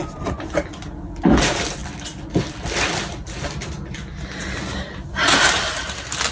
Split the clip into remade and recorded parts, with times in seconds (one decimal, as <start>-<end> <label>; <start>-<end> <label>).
0.0-6.3 recorded